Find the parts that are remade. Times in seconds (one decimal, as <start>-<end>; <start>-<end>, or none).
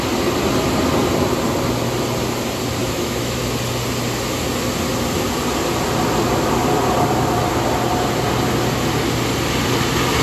2.8-3.4